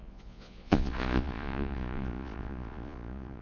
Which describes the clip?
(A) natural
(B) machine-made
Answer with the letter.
B